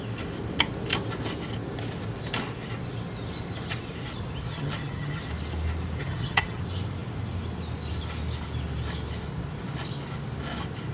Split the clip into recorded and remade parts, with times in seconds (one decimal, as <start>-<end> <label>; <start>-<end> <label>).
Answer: 0.0-4.5 recorded; 4.5-5.2 remade; 5.2-6.0 recorded; 6.0-6.6 remade; 6.6-10.9 recorded